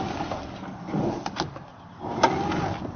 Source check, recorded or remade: recorded